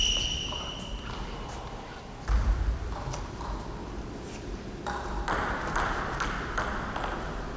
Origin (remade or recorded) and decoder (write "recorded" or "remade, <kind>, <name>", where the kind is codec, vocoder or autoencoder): recorded